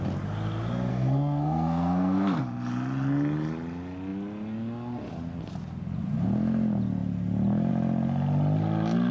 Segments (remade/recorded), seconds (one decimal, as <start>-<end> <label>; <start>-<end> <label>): 0.0-0.9 recorded; 0.9-2.4 remade; 2.4-9.1 recorded